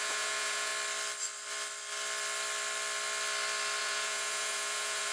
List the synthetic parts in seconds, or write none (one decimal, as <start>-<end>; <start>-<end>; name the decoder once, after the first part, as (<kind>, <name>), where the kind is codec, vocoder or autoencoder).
0.0-0.7 (vocoder, Vocos); 3.8-5.1